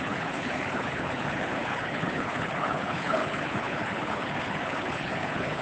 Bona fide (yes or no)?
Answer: no